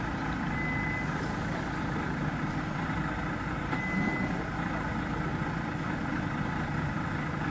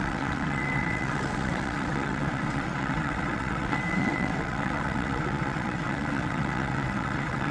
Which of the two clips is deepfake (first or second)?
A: second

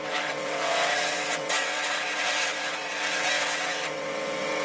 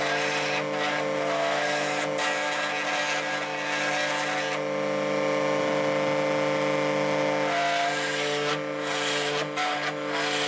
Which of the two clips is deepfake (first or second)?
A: first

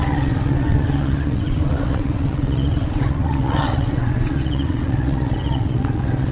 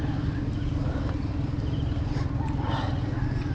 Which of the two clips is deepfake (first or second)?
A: first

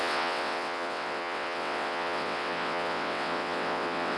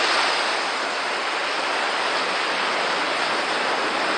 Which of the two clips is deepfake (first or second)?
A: first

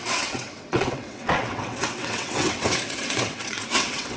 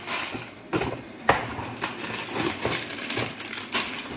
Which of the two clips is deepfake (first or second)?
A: first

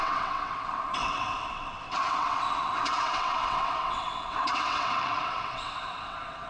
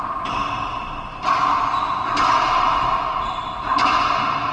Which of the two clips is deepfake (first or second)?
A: first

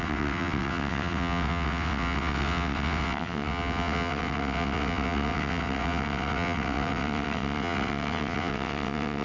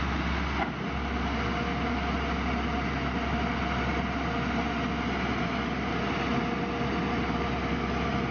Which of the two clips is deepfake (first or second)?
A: first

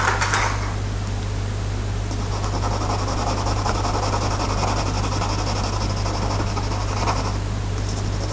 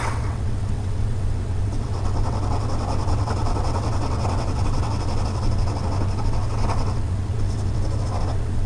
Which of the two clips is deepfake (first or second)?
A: second